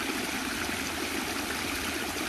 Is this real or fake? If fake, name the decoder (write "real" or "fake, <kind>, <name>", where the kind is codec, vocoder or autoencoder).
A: real